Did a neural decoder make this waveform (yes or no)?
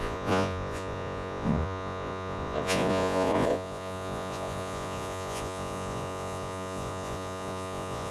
yes